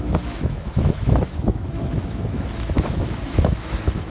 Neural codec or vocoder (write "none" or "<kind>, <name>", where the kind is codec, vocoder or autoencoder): autoencoder, DAC-VAE